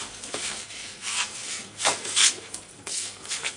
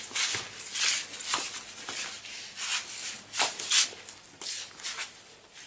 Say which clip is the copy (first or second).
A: first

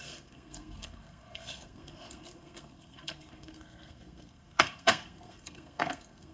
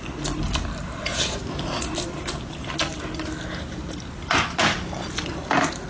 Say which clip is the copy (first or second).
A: first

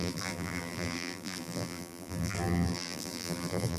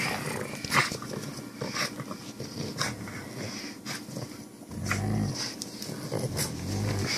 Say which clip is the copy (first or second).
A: first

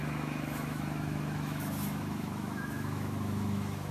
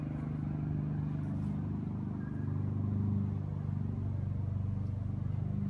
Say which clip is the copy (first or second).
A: first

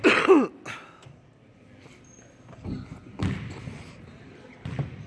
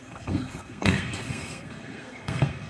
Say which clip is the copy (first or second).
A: second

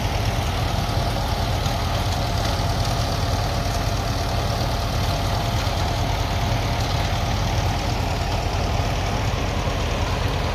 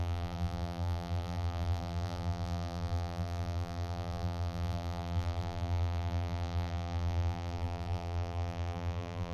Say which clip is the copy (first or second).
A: second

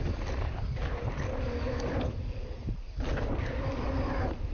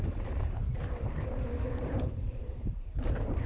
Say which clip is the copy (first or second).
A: second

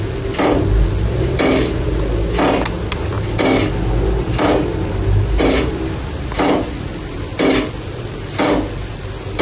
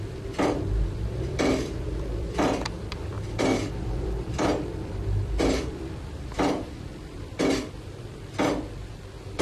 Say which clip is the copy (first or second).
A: second